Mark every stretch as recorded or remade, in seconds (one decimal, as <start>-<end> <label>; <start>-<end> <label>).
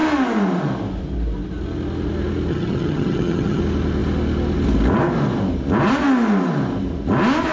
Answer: 0.0-2.5 recorded; 2.5-3.6 remade; 3.6-7.5 recorded